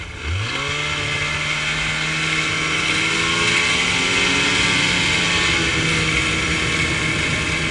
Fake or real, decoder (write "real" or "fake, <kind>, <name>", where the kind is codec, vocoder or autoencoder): real